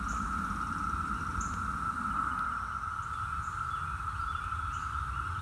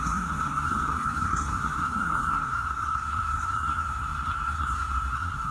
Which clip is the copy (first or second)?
second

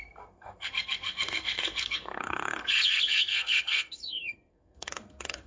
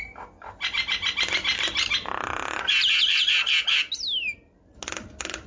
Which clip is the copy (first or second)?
first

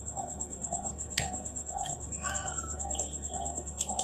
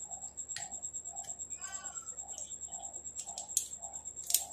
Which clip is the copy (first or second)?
first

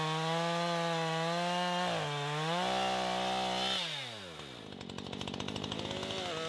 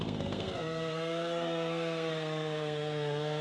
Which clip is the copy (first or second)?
second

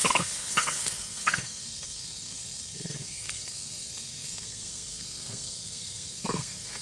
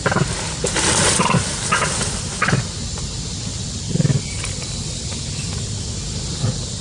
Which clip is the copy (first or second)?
first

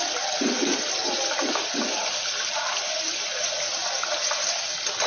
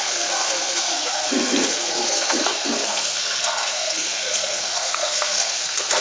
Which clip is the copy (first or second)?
second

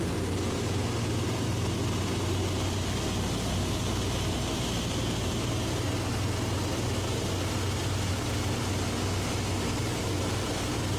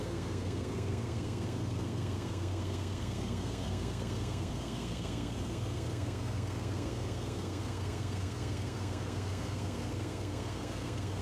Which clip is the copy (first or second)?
second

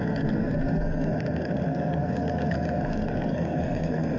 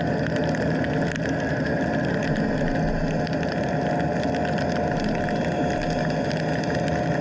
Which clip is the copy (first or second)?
first